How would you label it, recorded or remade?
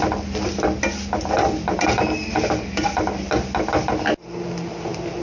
recorded